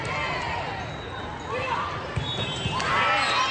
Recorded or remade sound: recorded